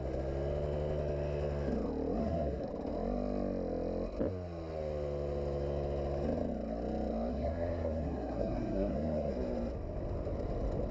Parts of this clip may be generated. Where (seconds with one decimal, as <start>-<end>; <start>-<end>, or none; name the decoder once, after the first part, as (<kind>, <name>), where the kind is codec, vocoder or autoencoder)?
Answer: 2.2-2.7 (codec, SNAC); 7.3-9.3